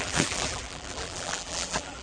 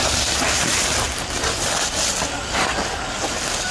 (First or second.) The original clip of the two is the second